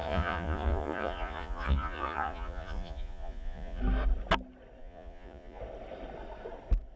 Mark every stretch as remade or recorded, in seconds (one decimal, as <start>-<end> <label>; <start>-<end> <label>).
0.0-3.8 remade; 3.8-4.8 recorded; 4.8-5.6 remade; 5.6-7.0 recorded